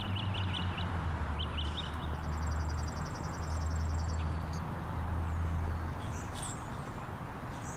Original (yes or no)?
yes